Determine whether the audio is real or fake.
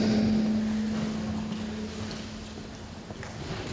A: real